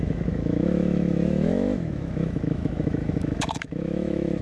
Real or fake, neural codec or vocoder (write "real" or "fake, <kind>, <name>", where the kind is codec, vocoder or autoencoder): fake, autoencoder, DAC-VAE